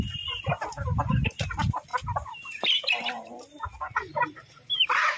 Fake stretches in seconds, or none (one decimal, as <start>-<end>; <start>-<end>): none